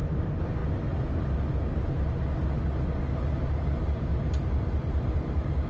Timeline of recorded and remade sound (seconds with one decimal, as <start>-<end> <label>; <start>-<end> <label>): 0.0-4.1 recorded; 4.1-5.7 remade